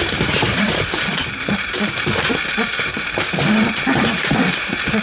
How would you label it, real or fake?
fake